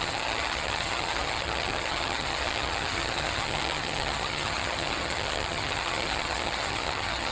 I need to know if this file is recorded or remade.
remade